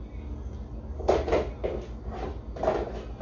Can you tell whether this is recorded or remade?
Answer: recorded